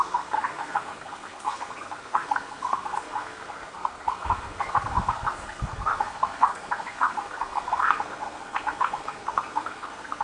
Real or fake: fake